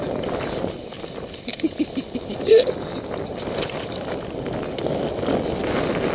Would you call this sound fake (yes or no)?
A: no